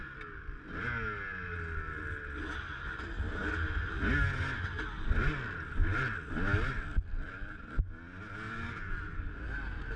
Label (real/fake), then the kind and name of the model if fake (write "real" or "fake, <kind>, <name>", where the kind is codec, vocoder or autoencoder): real